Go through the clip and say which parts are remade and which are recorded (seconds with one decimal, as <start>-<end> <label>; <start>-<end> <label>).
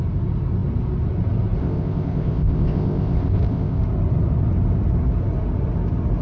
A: 0.0-1.6 recorded; 1.6-3.8 remade; 3.8-6.2 recorded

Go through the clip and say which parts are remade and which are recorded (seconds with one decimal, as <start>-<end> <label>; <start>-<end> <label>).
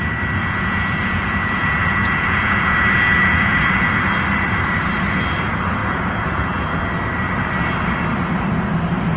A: 0.0-0.4 recorded; 0.4-4.1 remade; 4.1-5.8 recorded; 5.8-6.8 remade; 6.8-9.2 recorded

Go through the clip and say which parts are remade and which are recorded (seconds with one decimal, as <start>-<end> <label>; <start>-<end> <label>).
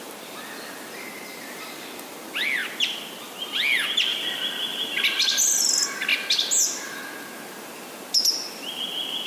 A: 0.0-1.3 recorded; 1.3-1.9 remade; 1.9-2.6 recorded; 2.6-3.5 remade; 3.5-4.1 recorded; 4.1-5.5 remade; 5.5-9.3 recorded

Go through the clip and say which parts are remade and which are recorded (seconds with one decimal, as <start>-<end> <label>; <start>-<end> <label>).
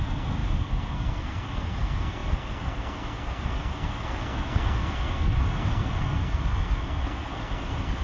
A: 0.0-8.0 remade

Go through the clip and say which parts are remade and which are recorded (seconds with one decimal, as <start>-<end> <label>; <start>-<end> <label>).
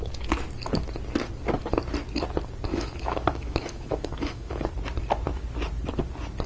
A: 0.0-2.7 recorded; 2.7-4.7 remade; 4.7-6.5 recorded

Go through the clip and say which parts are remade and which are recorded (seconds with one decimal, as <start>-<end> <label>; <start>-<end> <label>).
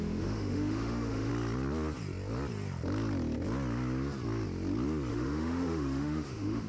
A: 0.0-1.3 remade; 1.3-5.1 recorded; 5.1-6.7 remade